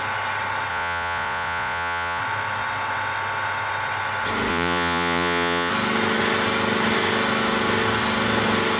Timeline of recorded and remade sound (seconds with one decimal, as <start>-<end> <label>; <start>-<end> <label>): 0.0-0.7 recorded; 0.7-2.2 remade; 2.2-4.5 recorded; 4.5-5.7 remade; 5.7-8.8 recorded